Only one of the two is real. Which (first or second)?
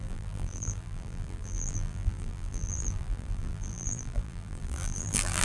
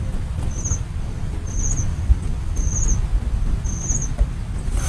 second